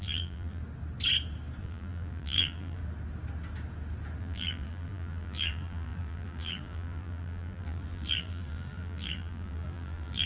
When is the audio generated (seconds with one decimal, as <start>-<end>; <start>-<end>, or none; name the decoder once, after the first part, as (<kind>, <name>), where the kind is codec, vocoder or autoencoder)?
0.0-0.6 (vocoder, BigVGAN v2); 1.6-2.8; 4.2-10.3